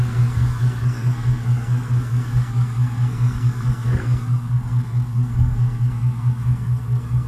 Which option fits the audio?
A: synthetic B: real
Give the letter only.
A